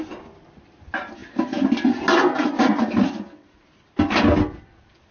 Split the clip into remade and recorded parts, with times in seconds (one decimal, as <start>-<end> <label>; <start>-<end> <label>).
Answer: 0.0-5.1 recorded